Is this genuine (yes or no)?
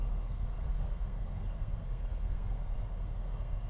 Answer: no